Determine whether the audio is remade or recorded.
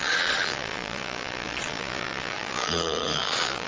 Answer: remade